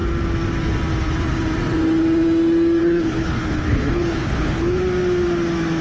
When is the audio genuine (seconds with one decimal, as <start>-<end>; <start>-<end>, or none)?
0.0-2.8; 4.8-5.8